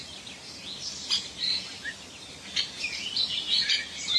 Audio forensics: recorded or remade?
recorded